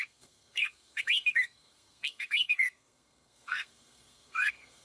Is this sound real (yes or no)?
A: no